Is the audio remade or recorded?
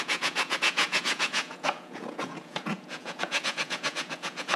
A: remade